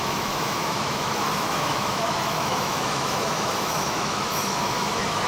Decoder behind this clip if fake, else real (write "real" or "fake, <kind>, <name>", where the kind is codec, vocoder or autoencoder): fake, autoencoder, DAC-VAE